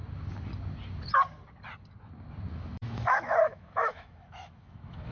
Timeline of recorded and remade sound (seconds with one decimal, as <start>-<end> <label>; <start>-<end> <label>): 0.0-2.5 recorded; 2.5-5.1 remade

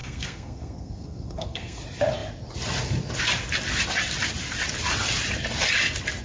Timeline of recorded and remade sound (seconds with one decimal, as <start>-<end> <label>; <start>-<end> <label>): 0.0-1.8 remade; 1.8-6.2 recorded

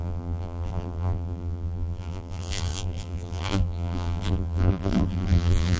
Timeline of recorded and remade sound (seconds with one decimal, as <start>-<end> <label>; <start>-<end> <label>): 0.0-5.8 remade

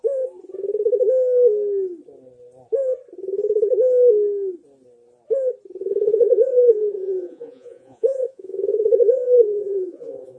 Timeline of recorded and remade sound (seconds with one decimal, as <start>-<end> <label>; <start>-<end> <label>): 0.0-5.8 recorded; 5.8-10.4 remade

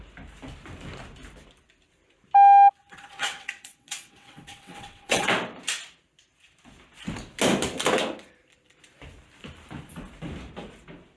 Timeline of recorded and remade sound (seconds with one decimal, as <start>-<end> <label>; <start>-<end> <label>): 0.0-2.8 recorded; 2.8-5.3 remade; 5.3-11.2 recorded